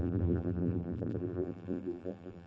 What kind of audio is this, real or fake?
fake